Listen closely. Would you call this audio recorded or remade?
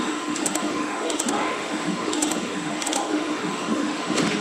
remade